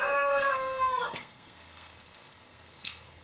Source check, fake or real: fake